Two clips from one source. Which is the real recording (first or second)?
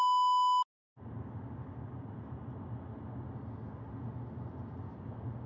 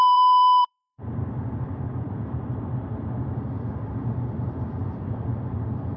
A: first